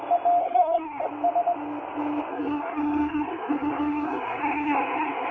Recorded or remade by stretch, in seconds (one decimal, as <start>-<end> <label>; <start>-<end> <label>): 0.0-0.4 recorded; 0.4-1.1 remade; 1.1-2.3 recorded; 2.3-5.3 remade